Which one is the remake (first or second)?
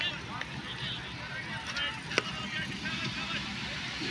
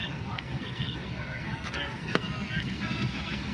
second